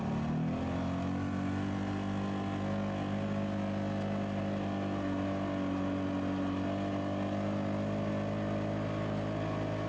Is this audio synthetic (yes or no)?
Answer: no